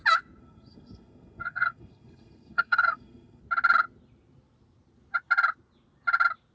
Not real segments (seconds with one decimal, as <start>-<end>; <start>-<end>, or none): 0.4-3.4